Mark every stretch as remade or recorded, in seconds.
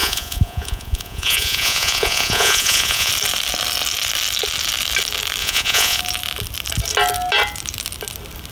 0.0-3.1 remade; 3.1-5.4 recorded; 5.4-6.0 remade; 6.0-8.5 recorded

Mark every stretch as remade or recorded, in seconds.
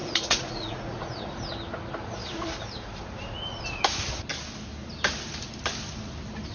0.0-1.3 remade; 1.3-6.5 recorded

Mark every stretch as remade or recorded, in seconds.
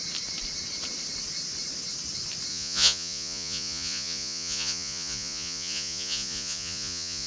0.0-2.5 recorded; 2.5-7.3 remade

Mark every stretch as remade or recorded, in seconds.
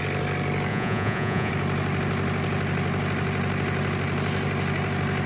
0.0-0.7 recorded; 0.7-1.5 remade; 1.5-5.3 recorded